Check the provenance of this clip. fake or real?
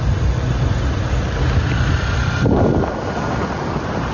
real